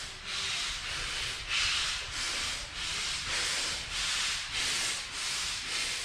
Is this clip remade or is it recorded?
recorded